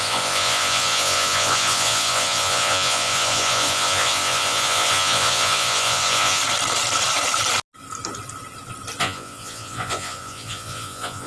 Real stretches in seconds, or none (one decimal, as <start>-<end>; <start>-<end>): 6.4-9.0